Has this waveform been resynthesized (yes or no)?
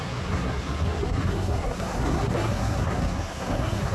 yes